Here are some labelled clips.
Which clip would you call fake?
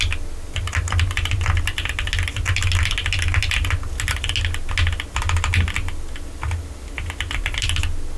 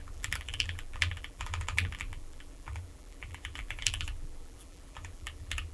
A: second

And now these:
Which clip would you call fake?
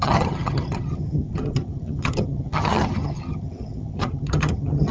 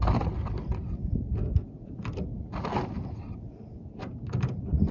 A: first